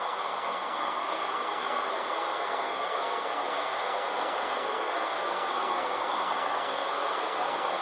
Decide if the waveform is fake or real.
fake